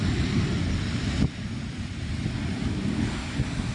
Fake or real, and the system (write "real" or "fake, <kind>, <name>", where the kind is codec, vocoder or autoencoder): real